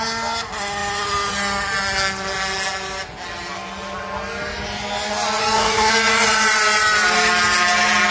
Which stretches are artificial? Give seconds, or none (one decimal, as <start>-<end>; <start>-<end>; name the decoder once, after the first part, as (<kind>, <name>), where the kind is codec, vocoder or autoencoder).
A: 5.4-5.9 (codec, DAC)

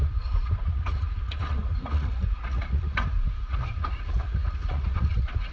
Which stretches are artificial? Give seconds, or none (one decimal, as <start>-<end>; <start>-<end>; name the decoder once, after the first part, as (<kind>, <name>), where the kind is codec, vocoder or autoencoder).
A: 0.0-5.5 (vocoder, Vocos)

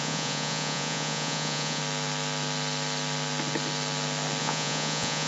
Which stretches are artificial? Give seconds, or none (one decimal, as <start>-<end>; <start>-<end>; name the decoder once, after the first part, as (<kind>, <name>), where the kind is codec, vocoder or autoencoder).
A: 0.0-1.8 (vocoder, Vocos); 4.4-5.3

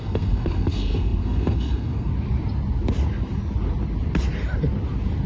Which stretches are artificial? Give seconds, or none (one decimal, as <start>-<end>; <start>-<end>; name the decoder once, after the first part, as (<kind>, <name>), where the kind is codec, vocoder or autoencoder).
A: 0.0-2.1 (codec, SNAC)